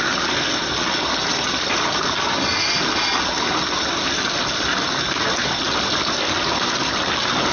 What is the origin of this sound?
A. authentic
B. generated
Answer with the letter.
A